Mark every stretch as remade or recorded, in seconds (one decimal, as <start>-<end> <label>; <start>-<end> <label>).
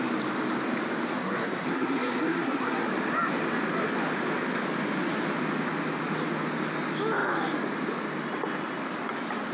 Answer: 0.0-1.2 recorded; 1.2-2.9 remade; 2.9-9.5 recorded